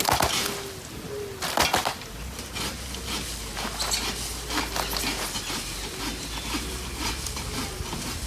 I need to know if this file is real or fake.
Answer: real